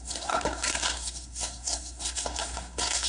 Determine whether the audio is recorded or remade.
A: remade